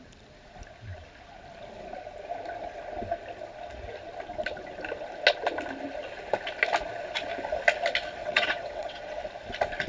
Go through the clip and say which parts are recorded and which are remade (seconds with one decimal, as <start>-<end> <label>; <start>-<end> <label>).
0.0-8.2 recorded; 8.2-9.3 remade; 9.3-9.9 recorded